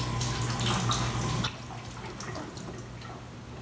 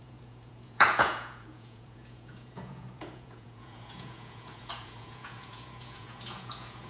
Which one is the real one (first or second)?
first